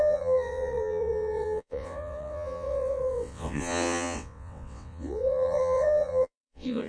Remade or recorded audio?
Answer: remade